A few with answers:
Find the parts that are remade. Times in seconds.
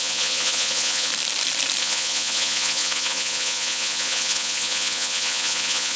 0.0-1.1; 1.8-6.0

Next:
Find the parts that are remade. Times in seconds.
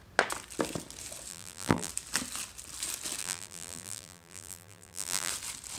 1.3-1.9; 3.2-5.3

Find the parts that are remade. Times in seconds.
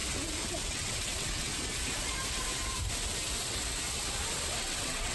0.6-1.5; 4.6-5.1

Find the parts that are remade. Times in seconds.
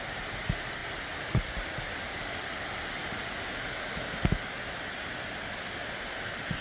none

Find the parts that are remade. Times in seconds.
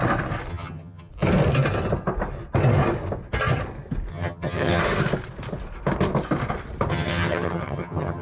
0.5-1.1; 4.1-4.8; 6.9-8.2